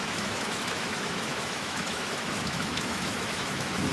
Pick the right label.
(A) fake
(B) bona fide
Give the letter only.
A